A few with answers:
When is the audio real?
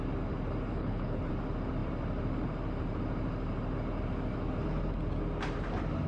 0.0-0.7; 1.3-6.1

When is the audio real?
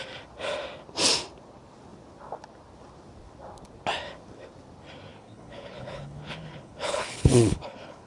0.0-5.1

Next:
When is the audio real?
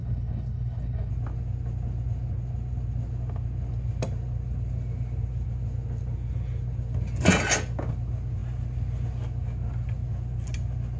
1.1-11.0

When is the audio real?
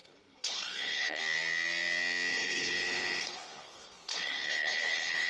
1.2-2.3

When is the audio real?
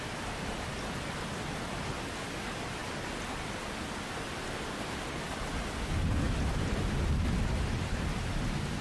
0.0-8.8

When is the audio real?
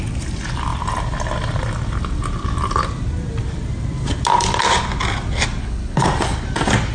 0.0-5.6; 6.1-6.9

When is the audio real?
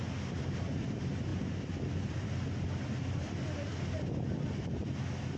0.0-5.4